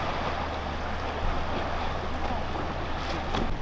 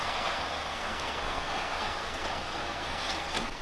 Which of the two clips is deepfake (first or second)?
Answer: second